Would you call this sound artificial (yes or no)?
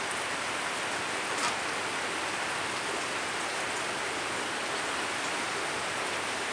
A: no